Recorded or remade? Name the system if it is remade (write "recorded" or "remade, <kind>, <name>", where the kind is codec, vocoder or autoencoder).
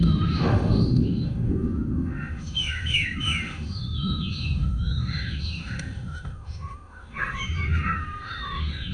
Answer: remade, autoencoder, DAC-VAE